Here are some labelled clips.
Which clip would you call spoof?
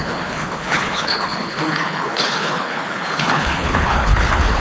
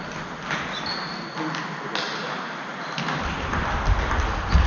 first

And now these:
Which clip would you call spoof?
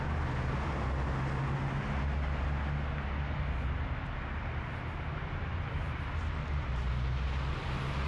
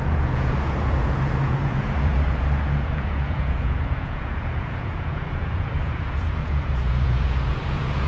second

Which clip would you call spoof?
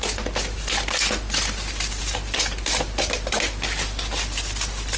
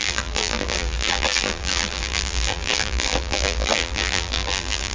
second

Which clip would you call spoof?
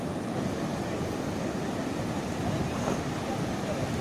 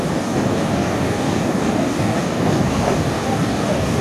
second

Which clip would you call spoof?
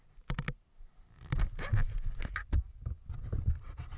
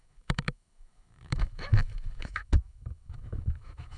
second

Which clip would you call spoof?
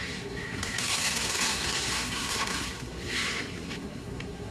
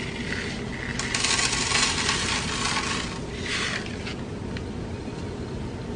first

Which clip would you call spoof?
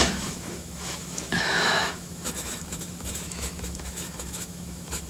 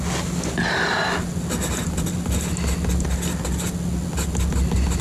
first